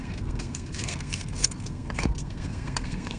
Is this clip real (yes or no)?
no